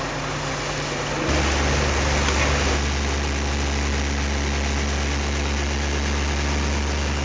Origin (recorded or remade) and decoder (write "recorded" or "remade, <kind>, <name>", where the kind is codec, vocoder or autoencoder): recorded